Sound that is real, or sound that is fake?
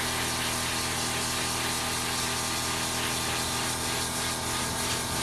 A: real